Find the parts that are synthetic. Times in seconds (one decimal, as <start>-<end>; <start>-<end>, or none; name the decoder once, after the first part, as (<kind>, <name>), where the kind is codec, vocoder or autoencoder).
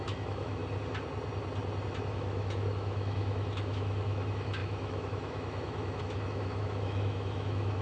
0.0-0.6 (autoencoder, DAC-VAE); 2.1-7.8